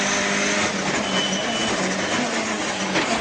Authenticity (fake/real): real